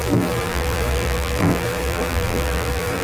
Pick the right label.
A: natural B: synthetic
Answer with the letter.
B